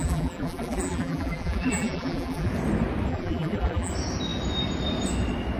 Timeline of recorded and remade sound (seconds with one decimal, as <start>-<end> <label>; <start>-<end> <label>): 0.0-2.5 remade; 2.5-3.1 recorded; 3.1-3.9 remade; 3.9-5.6 recorded